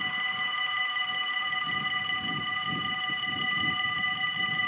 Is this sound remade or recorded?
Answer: remade